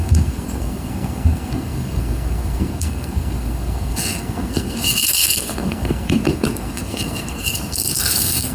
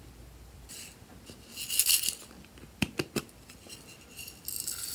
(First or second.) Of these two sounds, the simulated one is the first